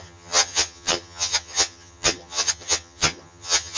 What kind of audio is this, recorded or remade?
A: remade